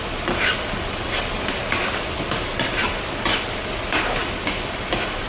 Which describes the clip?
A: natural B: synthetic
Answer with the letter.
A